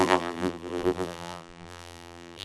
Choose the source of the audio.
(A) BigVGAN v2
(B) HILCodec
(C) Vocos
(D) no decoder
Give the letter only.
A